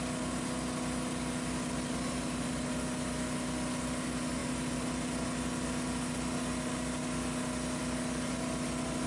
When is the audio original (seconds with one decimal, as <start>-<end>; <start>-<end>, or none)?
0.0-9.1